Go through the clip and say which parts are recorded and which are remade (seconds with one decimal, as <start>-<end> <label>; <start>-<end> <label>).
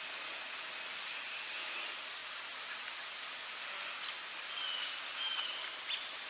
0.0-6.3 recorded